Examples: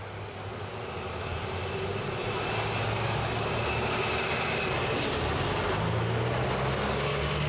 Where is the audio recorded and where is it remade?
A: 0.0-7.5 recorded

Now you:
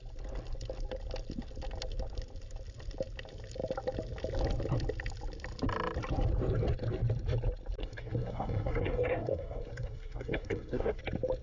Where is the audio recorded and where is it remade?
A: 0.0-7.8 recorded; 7.8-11.0 remade; 11.0-11.4 recorded

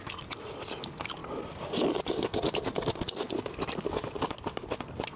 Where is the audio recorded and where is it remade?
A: 0.0-1.2 recorded; 1.2-4.3 remade; 4.3-5.2 recorded

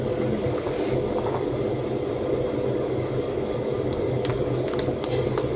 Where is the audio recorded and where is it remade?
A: 0.0-1.7 remade; 1.7-2.7 recorded; 2.7-5.6 remade

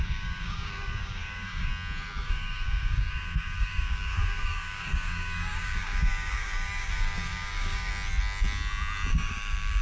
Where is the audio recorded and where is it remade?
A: 0.0-1.7 remade; 1.7-2.2 recorded; 2.2-7.9 remade; 7.9-9.1 recorded; 9.1-9.8 remade